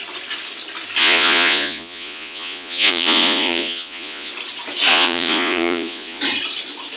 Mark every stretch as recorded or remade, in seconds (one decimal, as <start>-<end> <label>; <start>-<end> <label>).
0.0-1.0 recorded; 1.0-4.3 remade; 4.3-4.9 recorded; 4.9-6.2 remade; 6.2-7.0 recorded

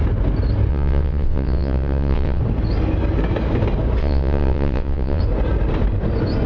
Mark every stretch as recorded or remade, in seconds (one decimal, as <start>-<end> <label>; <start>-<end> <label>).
0.0-0.7 recorded; 0.7-2.4 remade; 2.4-4.0 recorded; 4.0-5.2 remade; 5.2-6.5 recorded

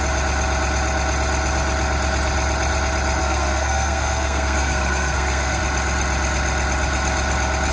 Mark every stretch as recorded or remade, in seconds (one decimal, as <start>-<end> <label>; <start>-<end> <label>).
0.0-3.2 recorded; 3.2-5.6 remade; 5.6-7.7 recorded

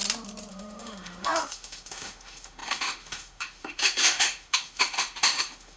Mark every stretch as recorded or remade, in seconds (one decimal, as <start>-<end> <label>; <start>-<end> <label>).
0.0-0.5 recorded; 0.5-5.8 remade